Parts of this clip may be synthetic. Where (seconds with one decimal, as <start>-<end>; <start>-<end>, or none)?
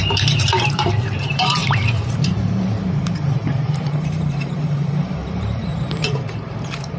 0.0-7.0